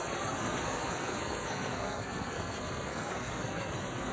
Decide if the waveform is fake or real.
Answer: fake